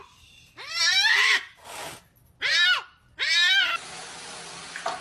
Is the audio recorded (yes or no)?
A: yes